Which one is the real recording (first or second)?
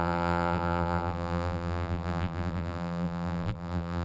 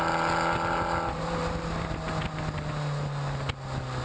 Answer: second